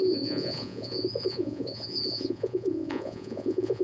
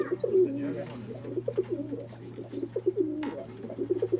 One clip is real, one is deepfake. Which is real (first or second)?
second